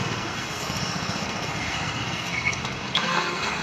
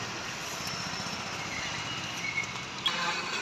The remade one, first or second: first